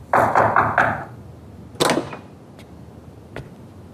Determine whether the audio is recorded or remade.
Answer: recorded